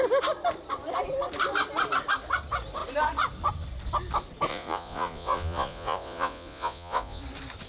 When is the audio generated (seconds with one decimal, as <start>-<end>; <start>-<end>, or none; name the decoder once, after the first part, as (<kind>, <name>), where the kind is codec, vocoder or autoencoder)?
4.5-7.2 (vocoder, Vocos)